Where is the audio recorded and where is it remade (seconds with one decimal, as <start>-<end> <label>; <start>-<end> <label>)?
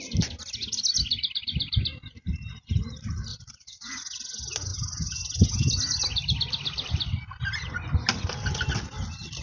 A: 0.0-3.3 recorded; 3.3-3.9 remade; 3.9-9.4 recorded